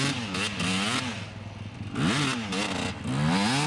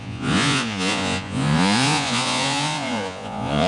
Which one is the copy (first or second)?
second